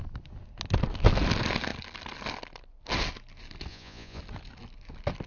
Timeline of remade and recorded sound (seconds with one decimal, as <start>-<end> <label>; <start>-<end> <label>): 0.0-3.7 recorded; 3.7-4.2 remade; 4.2-5.3 recorded